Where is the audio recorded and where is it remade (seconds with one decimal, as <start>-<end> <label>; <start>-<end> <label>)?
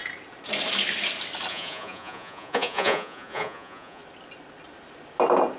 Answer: 0.0-1.5 recorded; 1.5-4.0 remade; 4.0-5.6 recorded